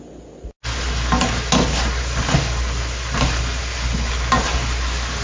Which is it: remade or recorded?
recorded